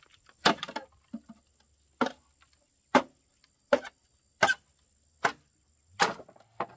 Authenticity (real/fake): real